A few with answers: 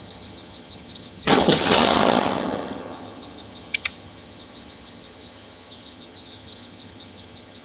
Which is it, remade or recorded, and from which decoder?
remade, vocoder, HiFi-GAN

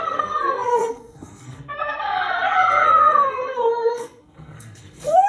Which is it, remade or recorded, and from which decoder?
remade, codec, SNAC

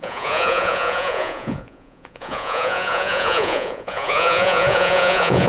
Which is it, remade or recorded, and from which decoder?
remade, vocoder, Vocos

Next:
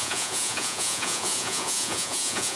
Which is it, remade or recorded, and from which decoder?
remade, vocoder, Vocos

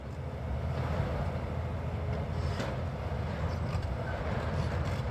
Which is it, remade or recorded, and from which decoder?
recorded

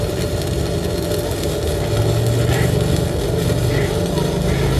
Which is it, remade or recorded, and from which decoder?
recorded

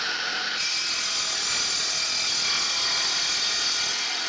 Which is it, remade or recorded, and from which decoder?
recorded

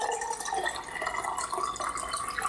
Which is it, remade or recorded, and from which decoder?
recorded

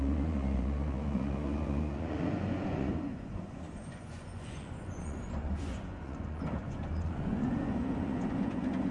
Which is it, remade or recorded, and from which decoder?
remade, vocoder, Vocos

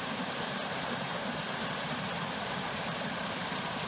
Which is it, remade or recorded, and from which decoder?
remade, vocoder, BigVGAN v2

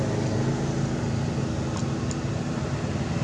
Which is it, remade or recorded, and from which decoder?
recorded